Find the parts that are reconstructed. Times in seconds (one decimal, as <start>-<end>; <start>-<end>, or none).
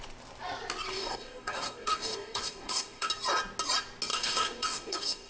0.9-3.1; 4.1-5.3